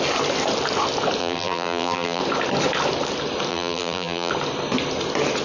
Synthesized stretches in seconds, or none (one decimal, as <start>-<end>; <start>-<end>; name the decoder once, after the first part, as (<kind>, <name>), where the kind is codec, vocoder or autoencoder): 1.2-2.2 (vocoder, BigVGAN v2); 3.5-4.3